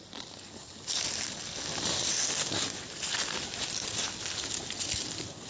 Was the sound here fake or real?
real